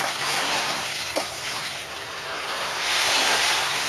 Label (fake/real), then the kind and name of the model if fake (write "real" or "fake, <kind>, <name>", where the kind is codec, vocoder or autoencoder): fake, codec, SNAC